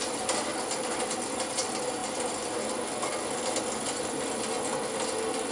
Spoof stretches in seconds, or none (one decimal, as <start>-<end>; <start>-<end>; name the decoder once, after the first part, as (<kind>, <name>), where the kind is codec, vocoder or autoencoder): none